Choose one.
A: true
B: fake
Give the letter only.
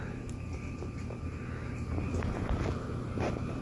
A